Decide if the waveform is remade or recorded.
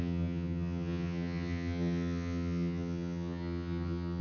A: remade